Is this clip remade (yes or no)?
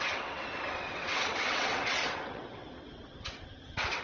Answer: yes